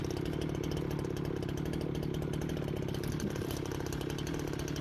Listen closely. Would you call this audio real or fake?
real